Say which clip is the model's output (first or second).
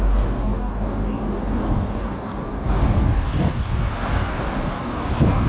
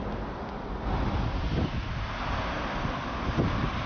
first